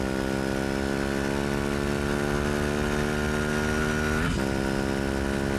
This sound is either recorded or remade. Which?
recorded